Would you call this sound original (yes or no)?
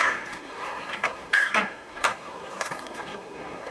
no